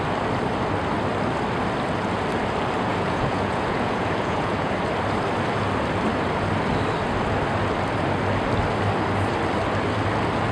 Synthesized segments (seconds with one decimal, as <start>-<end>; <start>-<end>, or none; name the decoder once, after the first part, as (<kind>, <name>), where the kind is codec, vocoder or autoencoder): 2.9-4.7 (vocoder, Vocos)